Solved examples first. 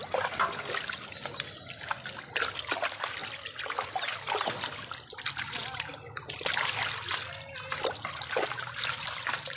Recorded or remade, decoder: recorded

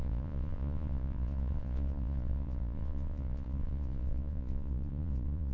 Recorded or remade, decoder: remade, vocoder, Vocos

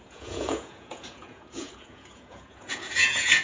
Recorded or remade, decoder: remade, vocoder, Vocos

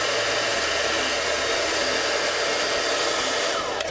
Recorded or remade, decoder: recorded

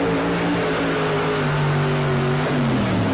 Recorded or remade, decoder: recorded